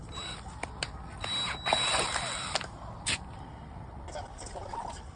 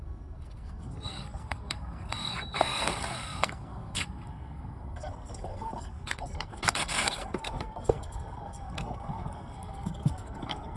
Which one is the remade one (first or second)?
second